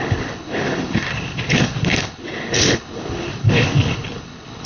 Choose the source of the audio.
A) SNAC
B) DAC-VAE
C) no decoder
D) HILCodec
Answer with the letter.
D